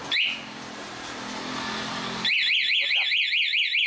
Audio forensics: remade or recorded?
recorded